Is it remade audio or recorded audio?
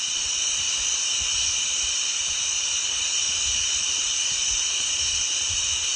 recorded